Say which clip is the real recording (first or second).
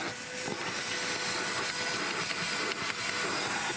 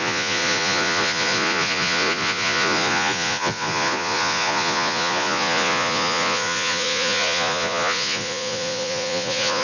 first